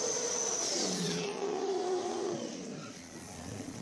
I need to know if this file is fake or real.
fake